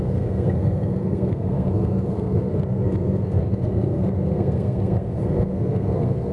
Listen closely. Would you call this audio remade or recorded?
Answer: remade